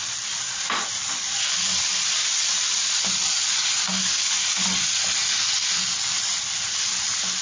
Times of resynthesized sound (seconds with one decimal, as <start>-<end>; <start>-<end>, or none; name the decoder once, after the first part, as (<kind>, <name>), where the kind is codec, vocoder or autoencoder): 2.2-2.9 (vocoder, BigVGAN v2)